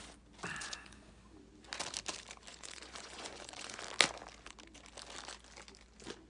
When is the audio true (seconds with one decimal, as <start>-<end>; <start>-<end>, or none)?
0.0-0.6; 1.1-2.5; 3.8-6.3